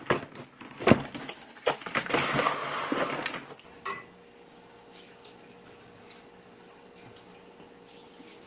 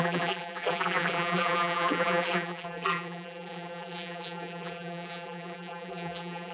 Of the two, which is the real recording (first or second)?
first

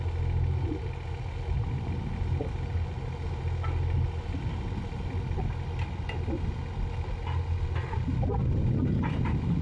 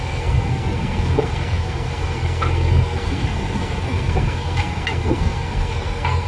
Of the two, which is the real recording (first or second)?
first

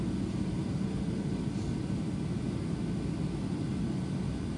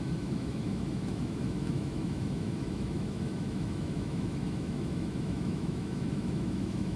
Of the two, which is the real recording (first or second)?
first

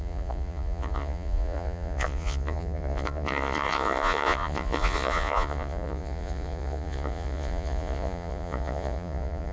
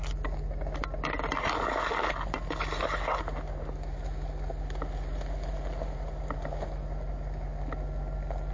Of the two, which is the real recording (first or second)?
second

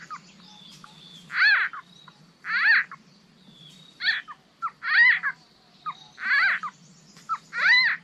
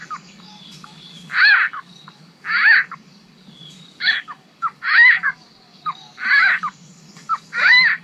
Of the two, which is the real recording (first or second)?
first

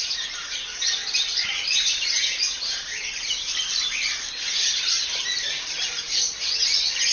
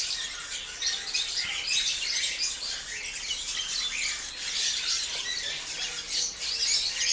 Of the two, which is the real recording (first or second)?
second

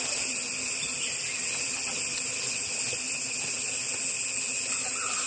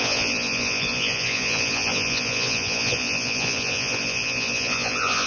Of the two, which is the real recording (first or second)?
first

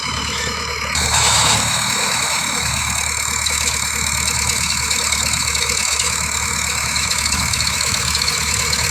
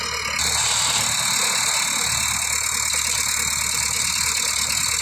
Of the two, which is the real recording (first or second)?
second